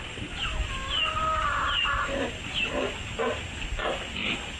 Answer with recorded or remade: recorded